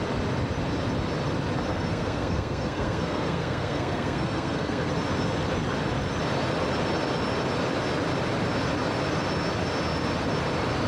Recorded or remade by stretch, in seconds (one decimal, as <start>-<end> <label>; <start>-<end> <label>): 0.0-1.7 recorded; 1.7-4.9 remade; 4.9-10.9 recorded